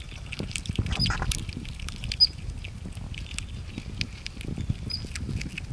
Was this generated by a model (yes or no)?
no